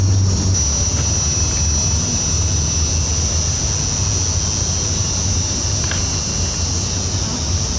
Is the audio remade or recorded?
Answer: recorded